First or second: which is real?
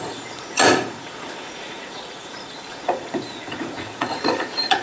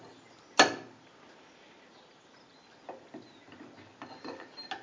second